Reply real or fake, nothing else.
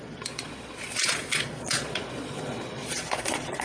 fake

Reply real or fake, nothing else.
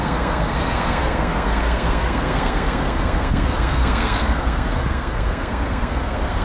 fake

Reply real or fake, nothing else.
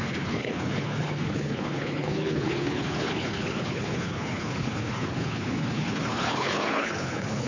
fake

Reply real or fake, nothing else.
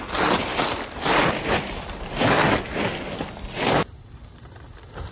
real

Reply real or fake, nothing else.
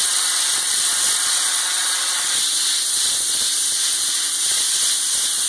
real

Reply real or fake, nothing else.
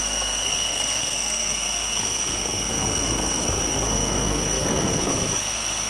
fake